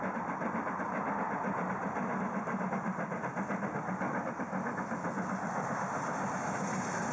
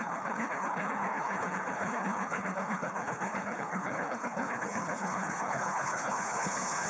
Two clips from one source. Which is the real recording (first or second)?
first